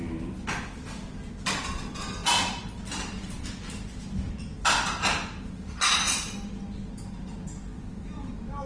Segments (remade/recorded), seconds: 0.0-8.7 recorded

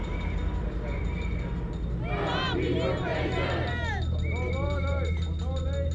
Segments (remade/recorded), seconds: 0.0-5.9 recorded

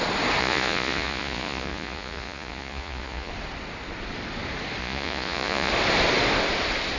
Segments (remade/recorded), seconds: 0.0-0.4 recorded; 0.4-3.3 remade; 3.3-4.8 recorded; 4.8-5.7 remade; 5.7-7.0 recorded

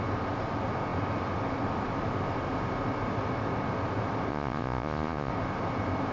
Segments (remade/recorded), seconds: 0.0-4.3 recorded; 4.3-5.3 remade; 5.3-6.1 recorded

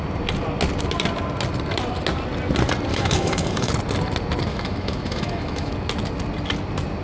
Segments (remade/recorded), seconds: 0.0-2.9 recorded; 2.9-3.7 remade; 3.7-4.5 recorded; 4.5-5.7 remade; 5.7-7.0 recorded

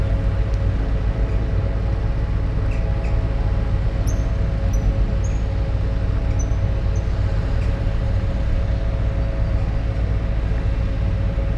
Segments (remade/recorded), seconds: 0.0-7.3 recorded; 7.3-8.6 remade; 8.6-11.6 recorded

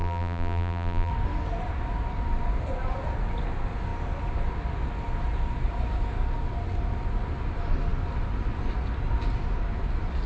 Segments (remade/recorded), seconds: 0.0-1.1 remade; 1.1-10.3 recorded

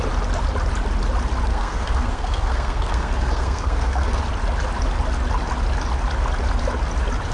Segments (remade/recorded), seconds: 0.0-1.5 recorded; 1.5-4.2 remade; 4.2-7.3 recorded